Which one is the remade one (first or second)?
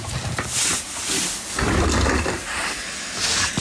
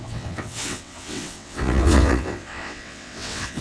second